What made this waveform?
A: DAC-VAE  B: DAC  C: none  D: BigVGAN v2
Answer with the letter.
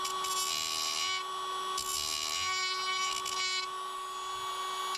C